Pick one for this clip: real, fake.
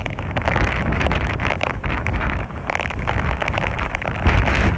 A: fake